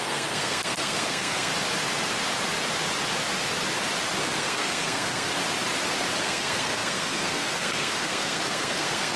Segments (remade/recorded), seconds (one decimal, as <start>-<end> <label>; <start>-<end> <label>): 0.0-1.5 remade; 1.5-4.2 recorded; 4.2-5.4 remade; 5.4-6.2 recorded; 6.2-9.2 remade

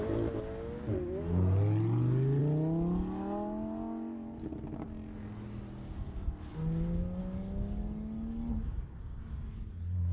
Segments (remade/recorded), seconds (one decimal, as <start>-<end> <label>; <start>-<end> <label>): 0.0-10.1 recorded

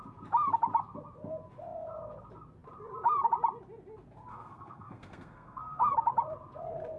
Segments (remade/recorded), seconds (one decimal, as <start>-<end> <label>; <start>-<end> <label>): 0.0-4.3 recorded; 4.3-5.9 remade; 5.9-7.0 recorded

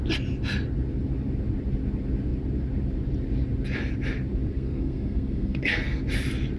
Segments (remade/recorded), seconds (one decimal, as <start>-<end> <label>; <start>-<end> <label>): 0.0-4.5 recorded; 4.5-6.0 remade; 6.0-6.6 recorded

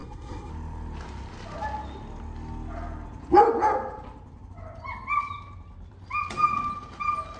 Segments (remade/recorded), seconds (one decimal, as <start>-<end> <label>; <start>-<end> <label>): 0.0-0.5 remade; 0.5-7.4 recorded

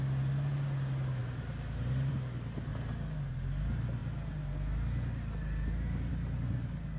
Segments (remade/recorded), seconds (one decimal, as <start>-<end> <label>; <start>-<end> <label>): 0.0-7.0 recorded

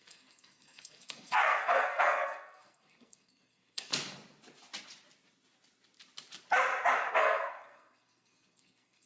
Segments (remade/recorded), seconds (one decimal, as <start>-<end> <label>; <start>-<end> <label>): 0.0-3.9 remade; 3.9-7.1 recorded; 7.1-9.1 remade